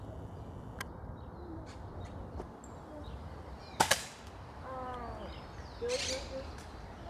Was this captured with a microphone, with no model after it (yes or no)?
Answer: yes